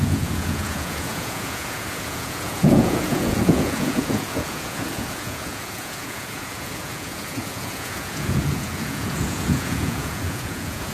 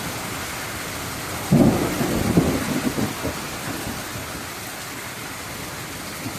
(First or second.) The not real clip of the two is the first